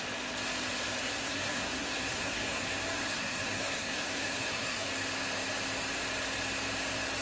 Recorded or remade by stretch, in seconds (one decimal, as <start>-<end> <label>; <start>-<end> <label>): 0.0-1.0 recorded; 1.0-4.9 remade; 4.9-7.2 recorded